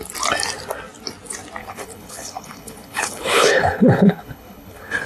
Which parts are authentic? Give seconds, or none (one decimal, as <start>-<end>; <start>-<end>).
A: 0.0-1.6